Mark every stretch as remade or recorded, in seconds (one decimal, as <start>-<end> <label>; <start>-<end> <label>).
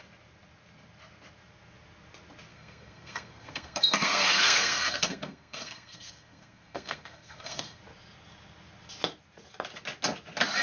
0.0-2.5 recorded; 2.5-7.8 remade; 7.8-10.6 recorded